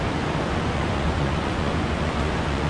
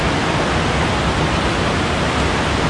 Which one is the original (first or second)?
second